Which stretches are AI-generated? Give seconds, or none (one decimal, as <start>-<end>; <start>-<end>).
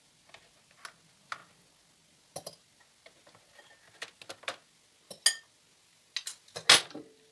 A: none